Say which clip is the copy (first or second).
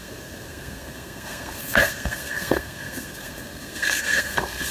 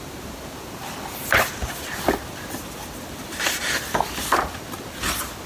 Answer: first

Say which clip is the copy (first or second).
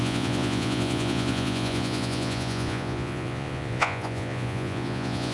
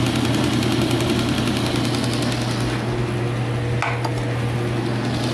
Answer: first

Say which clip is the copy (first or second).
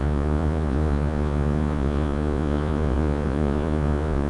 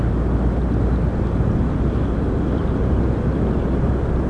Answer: first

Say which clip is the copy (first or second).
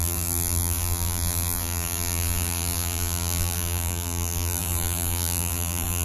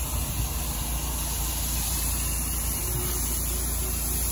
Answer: first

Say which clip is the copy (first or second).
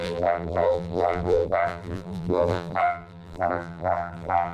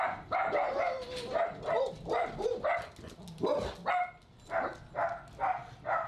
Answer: first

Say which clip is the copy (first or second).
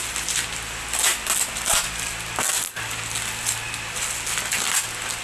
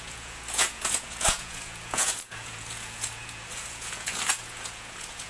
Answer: second